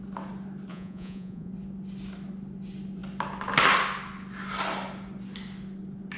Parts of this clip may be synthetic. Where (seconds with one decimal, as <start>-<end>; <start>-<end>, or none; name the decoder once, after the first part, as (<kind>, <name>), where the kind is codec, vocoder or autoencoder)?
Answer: 0.7-1.5 (vocoder, Vocos)